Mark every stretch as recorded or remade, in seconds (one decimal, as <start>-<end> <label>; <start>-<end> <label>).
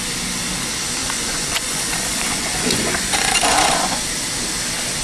0.0-1.0 recorded; 1.0-4.0 remade; 4.0-5.0 recorded